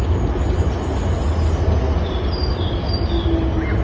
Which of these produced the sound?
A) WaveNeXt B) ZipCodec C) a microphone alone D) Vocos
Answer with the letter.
C